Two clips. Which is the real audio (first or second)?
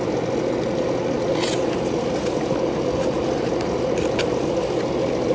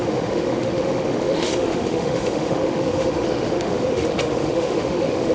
first